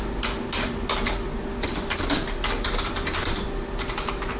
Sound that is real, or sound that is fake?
fake